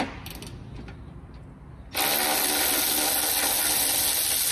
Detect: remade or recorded recorded